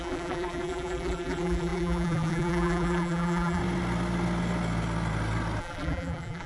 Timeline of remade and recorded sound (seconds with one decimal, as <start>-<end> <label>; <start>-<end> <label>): 0.0-3.6 remade; 3.6-5.6 recorded; 5.6-6.5 remade